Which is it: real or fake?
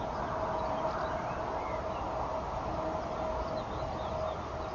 real